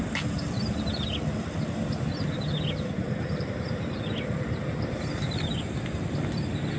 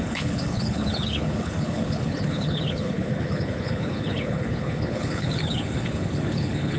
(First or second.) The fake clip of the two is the second